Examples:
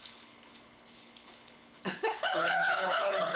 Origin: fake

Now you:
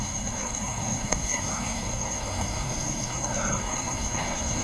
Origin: fake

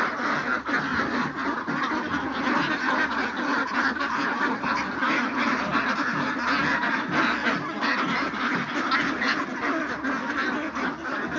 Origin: real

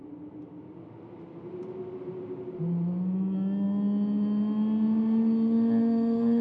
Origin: real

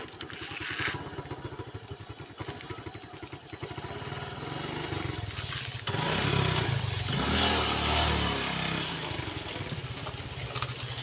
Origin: real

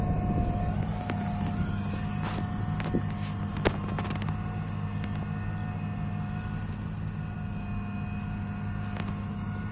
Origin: real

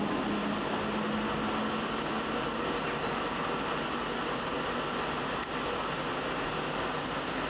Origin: real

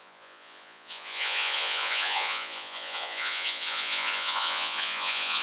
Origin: fake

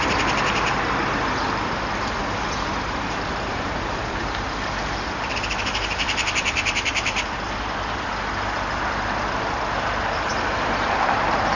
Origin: fake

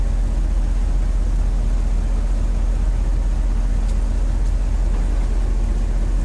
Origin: real